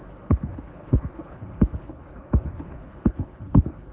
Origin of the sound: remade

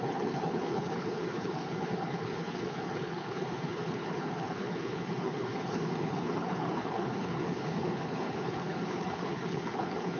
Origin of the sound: remade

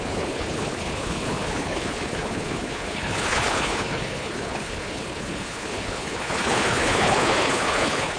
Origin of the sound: remade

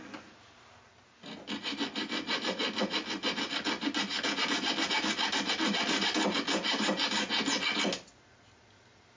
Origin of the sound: recorded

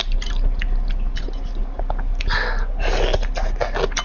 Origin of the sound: recorded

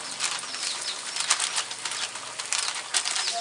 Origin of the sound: recorded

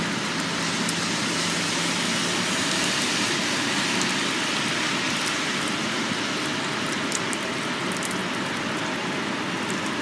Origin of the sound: recorded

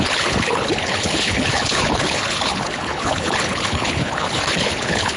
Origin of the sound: remade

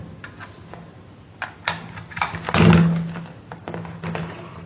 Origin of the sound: recorded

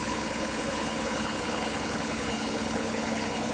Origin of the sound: remade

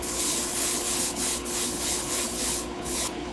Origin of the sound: remade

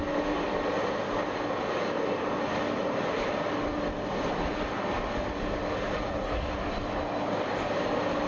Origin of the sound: recorded